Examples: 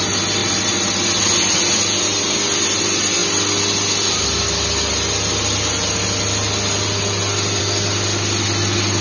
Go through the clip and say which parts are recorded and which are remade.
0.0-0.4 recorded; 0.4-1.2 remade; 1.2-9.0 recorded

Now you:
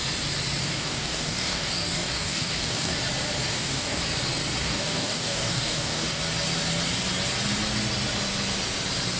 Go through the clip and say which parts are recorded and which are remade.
0.0-0.6 recorded; 0.6-3.0 remade; 3.0-3.5 recorded; 3.5-4.0 remade; 4.0-4.6 recorded; 4.6-6.2 remade; 6.2-9.2 recorded

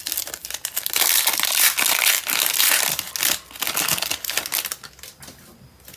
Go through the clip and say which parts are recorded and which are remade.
0.0-6.0 recorded

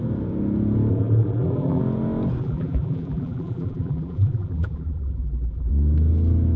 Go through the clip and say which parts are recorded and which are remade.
0.0-0.9 recorded; 0.9-1.8 remade; 1.8-2.4 recorded; 2.4-5.7 remade; 5.7-6.6 recorded

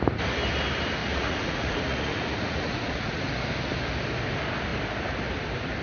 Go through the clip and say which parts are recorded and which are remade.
0.0-1.0 recorded; 1.0-3.2 remade; 3.2-5.8 recorded

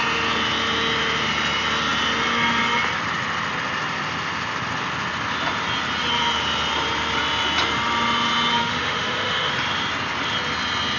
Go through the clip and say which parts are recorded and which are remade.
0.0-8.6 recorded; 8.6-9.5 remade; 9.5-11.0 recorded

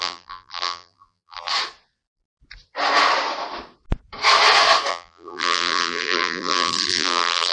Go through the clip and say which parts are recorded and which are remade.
0.0-1.5 remade; 1.5-4.9 recorded; 4.9-7.5 remade